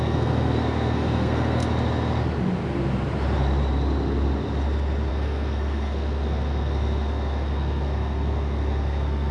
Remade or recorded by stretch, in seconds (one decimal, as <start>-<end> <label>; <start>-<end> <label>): 0.0-1.6 remade; 1.6-5.1 recorded; 5.1-9.3 remade